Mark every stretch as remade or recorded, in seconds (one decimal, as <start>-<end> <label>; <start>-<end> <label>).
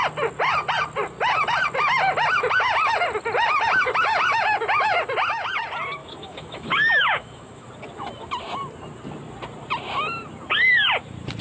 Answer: 0.0-6.0 recorded; 6.0-7.7 remade; 7.7-11.4 recorded